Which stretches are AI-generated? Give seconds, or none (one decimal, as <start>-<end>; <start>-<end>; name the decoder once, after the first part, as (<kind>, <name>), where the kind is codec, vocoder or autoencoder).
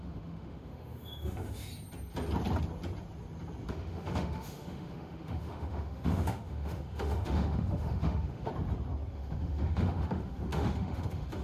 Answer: 0.0-1.7 (autoencoder, DAC-VAE); 3.7-8.5; 9.1-11.4